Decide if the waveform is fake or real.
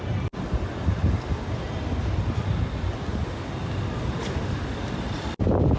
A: real